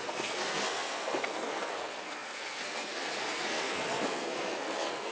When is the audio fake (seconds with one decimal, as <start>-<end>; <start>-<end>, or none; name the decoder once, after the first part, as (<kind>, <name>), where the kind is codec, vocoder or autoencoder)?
0.0-5.1 (codec, SNAC)